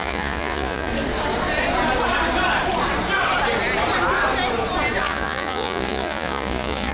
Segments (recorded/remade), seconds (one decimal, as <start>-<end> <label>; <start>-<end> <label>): 0.0-0.9 remade; 0.9-5.0 recorded; 5.0-6.9 remade